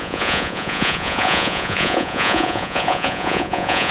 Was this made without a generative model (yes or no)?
no